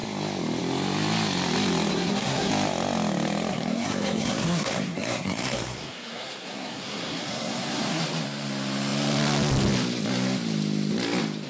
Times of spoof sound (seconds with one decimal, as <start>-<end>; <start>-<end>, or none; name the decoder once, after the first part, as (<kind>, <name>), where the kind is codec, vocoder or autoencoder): 1.9-2.5 (codec, SNAC); 3.5-8.0